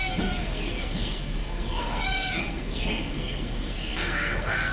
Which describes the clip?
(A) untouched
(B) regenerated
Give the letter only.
B